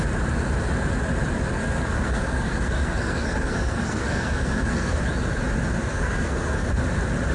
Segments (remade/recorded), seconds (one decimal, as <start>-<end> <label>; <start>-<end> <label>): 0.0-1.6 recorded; 1.6-5.0 remade; 5.0-5.9 recorded; 5.9-6.7 remade; 6.7-7.3 recorded